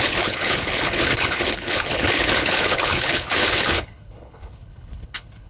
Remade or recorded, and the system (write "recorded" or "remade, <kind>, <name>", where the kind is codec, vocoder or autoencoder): remade, codec, HILCodec